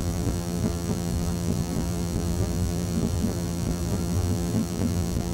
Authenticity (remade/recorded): remade